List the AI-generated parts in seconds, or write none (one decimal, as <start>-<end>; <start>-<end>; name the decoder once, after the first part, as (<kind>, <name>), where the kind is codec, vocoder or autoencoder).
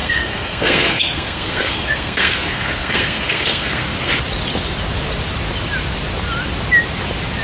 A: 0.0-4.1 (codec, SNAC)